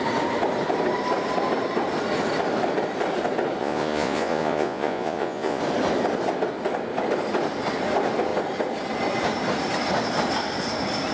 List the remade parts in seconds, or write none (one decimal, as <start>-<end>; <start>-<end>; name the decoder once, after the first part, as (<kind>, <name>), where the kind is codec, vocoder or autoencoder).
3.6-5.6 (vocoder, Vocos)